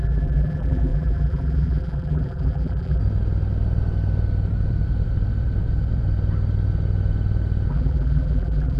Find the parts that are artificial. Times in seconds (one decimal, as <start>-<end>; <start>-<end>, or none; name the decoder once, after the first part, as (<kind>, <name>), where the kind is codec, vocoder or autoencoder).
0.0-3.0 (vocoder, BigVGAN v2); 7.7-8.8